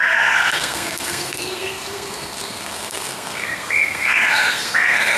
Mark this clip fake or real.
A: fake